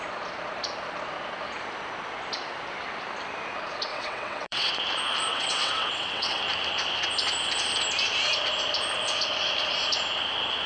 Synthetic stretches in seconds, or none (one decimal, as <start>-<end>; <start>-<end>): 3.9-4.7; 5.3-6.4